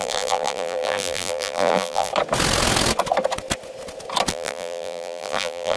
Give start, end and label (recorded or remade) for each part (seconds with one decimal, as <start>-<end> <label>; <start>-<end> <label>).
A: 0.0-2.1 remade; 2.1-4.3 recorded; 4.3-5.8 remade